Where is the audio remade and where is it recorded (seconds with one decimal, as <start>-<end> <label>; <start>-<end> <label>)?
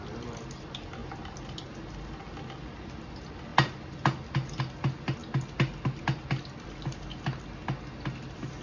0.0-8.6 recorded